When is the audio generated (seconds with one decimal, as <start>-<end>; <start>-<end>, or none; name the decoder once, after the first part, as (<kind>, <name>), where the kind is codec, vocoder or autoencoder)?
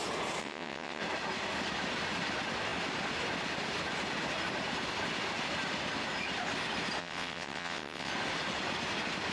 0.4-1.0 (vocoder, WaveNeXt); 7.0-8.1